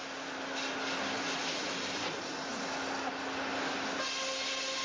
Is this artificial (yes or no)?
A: no